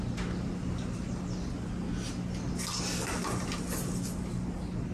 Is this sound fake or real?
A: real